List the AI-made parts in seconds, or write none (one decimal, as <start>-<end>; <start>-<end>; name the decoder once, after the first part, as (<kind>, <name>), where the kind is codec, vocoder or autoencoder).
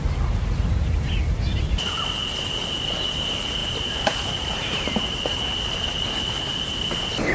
3.6-5.2 (vocoder, BigVGAN v2)